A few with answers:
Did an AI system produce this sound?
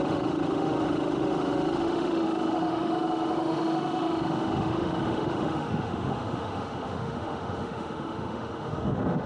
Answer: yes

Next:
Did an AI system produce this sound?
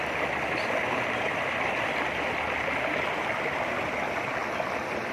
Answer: no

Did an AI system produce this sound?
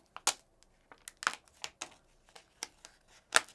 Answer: no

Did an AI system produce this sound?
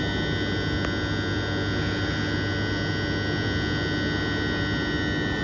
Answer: no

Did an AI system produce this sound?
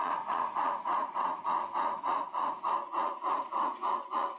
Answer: yes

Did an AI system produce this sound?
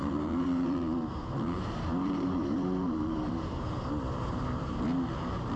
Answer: yes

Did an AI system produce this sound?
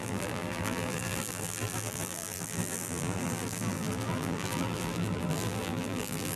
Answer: yes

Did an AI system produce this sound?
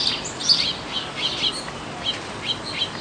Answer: no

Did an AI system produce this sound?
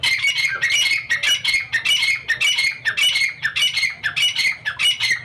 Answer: no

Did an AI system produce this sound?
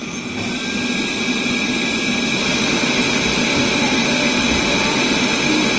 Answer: no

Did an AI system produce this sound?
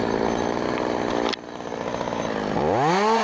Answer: no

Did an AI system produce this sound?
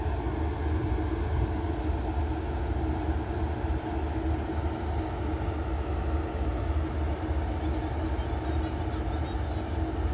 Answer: no